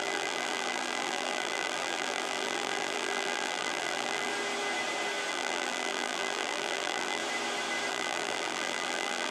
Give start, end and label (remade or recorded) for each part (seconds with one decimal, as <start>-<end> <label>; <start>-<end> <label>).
0.0-4.3 remade; 4.3-5.3 recorded; 5.3-7.2 remade; 7.2-7.9 recorded; 7.9-9.3 remade